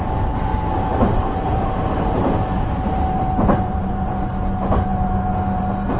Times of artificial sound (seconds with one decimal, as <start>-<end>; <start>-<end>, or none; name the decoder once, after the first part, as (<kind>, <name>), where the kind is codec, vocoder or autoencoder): 0.5-4.1 (vocoder, BigVGAN v2)